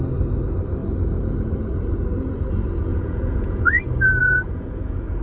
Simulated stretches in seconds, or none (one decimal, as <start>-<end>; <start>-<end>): 2.9-3.8; 4.2-5.2